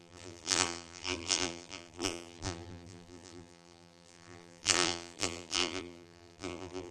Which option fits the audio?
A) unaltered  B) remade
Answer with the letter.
B